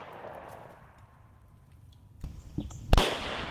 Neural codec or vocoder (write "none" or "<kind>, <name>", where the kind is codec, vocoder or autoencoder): none